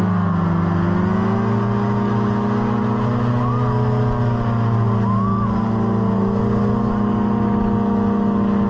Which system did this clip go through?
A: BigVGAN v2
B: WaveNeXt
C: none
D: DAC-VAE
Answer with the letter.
C